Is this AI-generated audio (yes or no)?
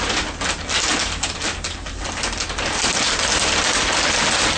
no